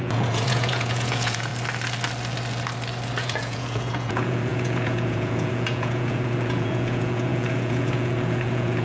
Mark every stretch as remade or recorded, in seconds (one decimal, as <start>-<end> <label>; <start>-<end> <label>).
0.0-1.5 remade; 1.5-3.2 recorded; 3.2-8.8 remade